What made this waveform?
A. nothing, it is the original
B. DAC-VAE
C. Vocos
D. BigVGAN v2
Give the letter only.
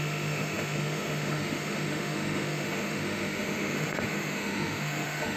B